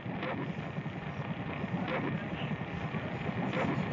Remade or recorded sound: recorded